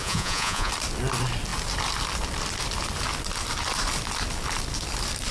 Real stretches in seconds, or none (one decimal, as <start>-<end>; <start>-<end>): 0.7-5.3